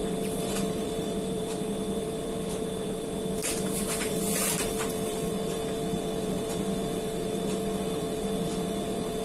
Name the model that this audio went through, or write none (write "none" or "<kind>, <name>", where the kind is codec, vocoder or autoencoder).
vocoder, BigVGAN v2